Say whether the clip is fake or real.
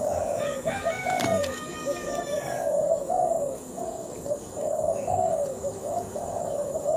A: fake